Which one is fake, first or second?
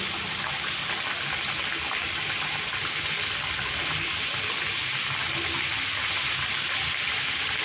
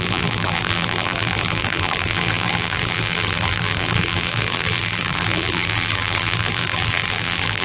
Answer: second